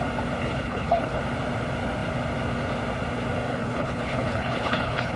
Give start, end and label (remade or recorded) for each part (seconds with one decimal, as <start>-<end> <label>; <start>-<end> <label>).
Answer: 0.0-0.4 recorded; 0.4-1.2 remade; 1.2-3.5 recorded; 3.5-5.2 remade